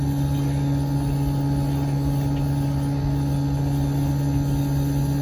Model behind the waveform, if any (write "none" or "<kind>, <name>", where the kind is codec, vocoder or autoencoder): none